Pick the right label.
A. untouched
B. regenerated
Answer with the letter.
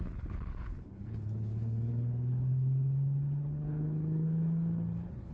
B